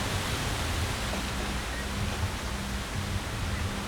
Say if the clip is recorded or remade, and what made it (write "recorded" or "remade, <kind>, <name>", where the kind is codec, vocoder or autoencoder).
recorded